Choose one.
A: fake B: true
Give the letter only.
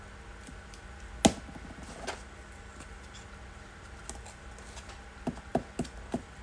B